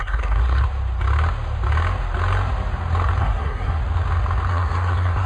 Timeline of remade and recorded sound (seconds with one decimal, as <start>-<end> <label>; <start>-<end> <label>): 0.0-0.6 remade; 0.6-3.2 recorded; 3.2-3.8 remade; 3.8-4.5 recorded; 4.5-5.3 remade